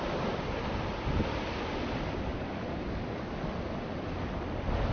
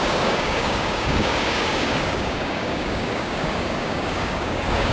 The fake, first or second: second